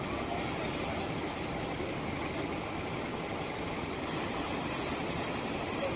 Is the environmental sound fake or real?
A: real